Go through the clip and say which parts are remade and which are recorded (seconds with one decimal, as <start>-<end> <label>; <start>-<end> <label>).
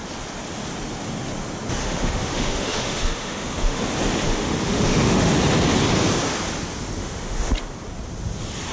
0.0-1.8 recorded; 1.8-3.8 remade; 3.8-4.2 recorded; 4.2-5.3 remade; 5.3-7.0 recorded; 7.0-7.5 remade; 7.5-8.7 recorded